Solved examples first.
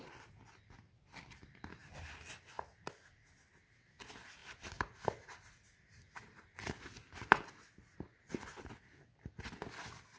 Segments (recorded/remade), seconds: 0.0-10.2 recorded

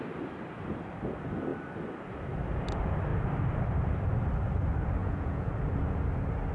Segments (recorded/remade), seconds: 0.0-5.0 recorded; 5.0-5.5 remade; 5.5-6.5 recorded

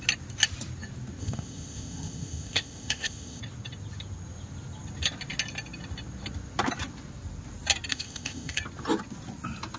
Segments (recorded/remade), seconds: 0.0-1.2 recorded; 1.2-3.4 remade; 3.4-7.9 recorded; 7.9-8.6 remade; 8.6-9.8 recorded

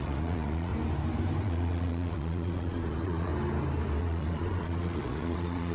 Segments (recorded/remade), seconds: 0.0-0.7 remade; 0.7-1.4 recorded; 1.4-3.3 remade; 3.3-4.0 recorded; 4.0-5.7 remade

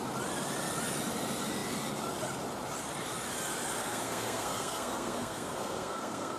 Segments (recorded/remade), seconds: 0.0-3.8 recorded; 3.8-6.4 remade

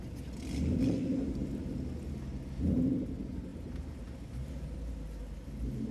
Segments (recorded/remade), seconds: 0.0-5.9 recorded

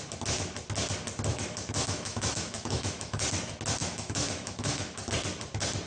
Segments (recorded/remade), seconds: 0.0-1.3 recorded; 1.3-3.2 remade; 3.2-3.8 recorded; 3.8-5.1 remade; 5.1-5.9 recorded

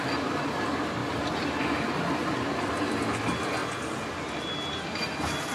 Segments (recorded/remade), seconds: 0.0-1.0 recorded; 1.0-2.7 remade; 2.7-5.5 recorded